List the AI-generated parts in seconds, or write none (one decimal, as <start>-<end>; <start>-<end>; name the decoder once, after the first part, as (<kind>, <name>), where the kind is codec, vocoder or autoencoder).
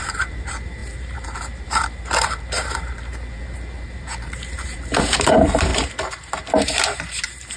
0.0-5.7 (vocoder, BigVGAN v2); 6.6-7.6